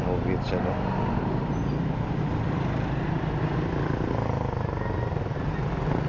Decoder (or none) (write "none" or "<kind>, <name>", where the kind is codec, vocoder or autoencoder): none